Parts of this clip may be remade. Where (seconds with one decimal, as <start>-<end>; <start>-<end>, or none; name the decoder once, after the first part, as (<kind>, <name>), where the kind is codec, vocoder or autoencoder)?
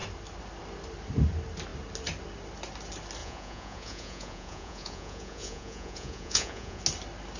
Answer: 3.2-6.8 (vocoder, Vocos)